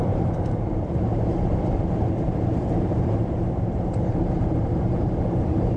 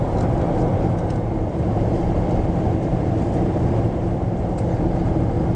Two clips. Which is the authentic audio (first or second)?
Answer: second